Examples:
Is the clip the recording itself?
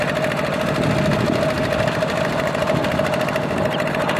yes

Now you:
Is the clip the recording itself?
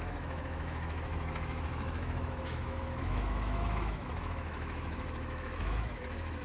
no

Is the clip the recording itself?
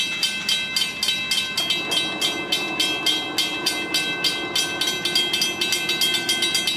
yes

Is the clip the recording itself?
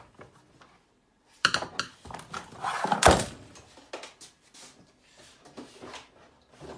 yes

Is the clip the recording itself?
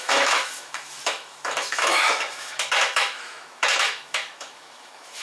no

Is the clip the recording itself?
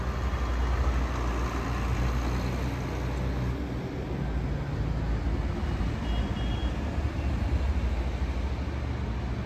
yes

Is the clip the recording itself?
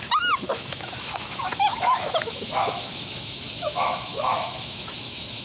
no